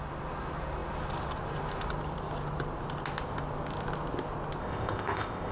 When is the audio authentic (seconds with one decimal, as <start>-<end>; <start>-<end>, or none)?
0.0-4.6